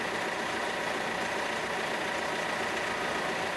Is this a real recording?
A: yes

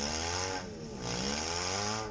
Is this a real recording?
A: yes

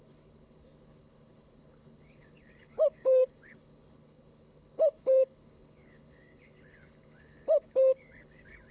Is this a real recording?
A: no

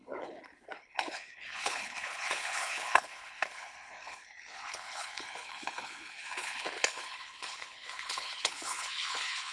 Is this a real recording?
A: no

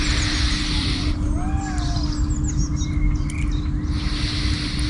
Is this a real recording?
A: yes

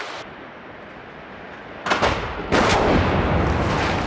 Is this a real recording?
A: yes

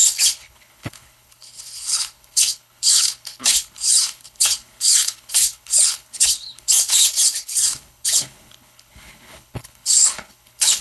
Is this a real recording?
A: no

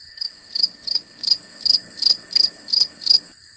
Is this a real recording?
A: no